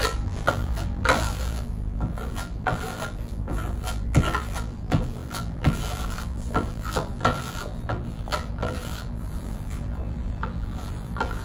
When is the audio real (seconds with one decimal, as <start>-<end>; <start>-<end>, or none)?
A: none